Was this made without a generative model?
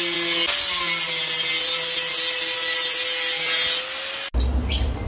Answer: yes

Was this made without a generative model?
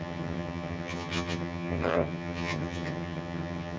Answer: no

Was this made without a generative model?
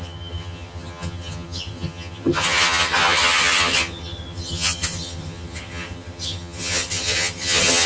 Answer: no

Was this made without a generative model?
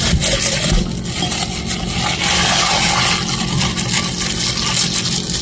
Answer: yes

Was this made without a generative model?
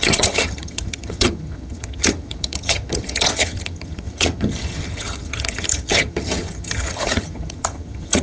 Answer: no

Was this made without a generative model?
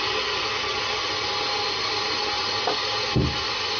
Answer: yes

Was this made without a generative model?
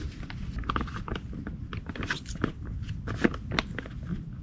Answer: yes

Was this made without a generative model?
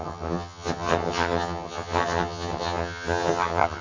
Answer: no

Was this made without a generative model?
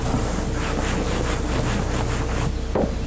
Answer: yes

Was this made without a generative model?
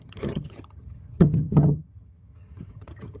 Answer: no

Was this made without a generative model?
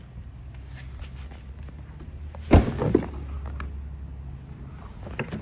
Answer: yes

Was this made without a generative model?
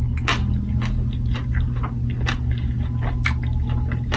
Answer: yes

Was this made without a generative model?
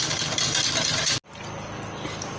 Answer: yes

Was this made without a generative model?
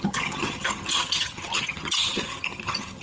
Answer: no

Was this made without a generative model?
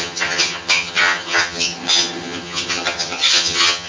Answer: no